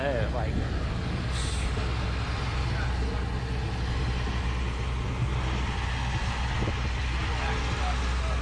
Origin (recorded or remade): recorded